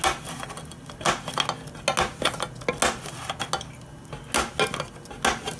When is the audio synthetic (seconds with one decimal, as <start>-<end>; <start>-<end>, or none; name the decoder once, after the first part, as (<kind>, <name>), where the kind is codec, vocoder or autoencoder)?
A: none